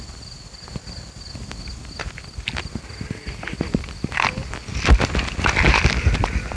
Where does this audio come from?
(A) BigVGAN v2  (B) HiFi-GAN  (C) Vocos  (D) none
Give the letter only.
D